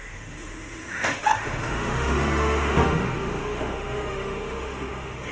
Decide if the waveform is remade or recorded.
remade